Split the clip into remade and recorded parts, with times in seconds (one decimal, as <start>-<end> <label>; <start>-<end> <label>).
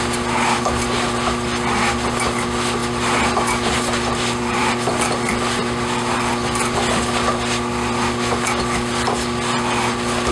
0.0-2.8 recorded; 2.8-4.6 remade; 4.6-5.6 recorded; 5.6-6.3 remade; 6.3-10.3 recorded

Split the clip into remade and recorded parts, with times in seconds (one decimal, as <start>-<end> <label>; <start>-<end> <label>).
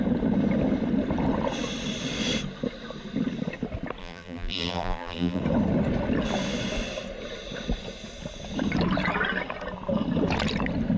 0.0-4.0 recorded; 4.0-5.4 remade; 5.4-11.0 recorded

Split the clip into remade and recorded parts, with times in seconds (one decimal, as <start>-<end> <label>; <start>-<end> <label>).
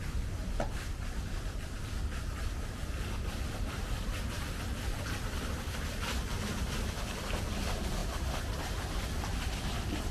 0.0-0.4 recorded; 0.4-5.4 remade; 5.4-10.1 recorded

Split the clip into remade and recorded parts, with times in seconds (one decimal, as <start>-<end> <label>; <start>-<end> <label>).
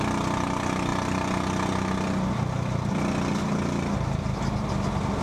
0.0-5.2 recorded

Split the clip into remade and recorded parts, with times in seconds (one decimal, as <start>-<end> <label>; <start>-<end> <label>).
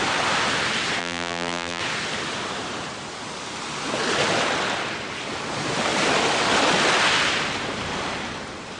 0.0-1.0 recorded; 1.0-1.8 remade; 1.8-8.8 recorded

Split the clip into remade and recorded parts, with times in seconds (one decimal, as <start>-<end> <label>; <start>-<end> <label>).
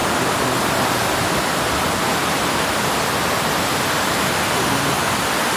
0.0-5.6 recorded